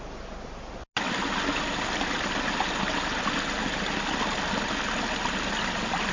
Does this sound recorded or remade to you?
recorded